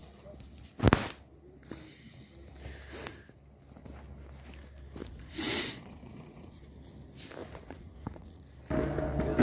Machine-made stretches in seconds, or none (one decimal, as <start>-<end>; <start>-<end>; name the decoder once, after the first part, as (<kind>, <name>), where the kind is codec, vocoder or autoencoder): 5.0-6.6 (vocoder, Vocos); 7.4-8.4